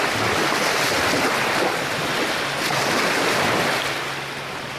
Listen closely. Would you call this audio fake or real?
real